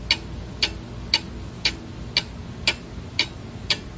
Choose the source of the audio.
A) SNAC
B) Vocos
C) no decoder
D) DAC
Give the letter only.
C